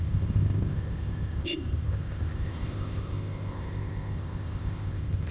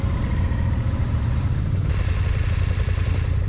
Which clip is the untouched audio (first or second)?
second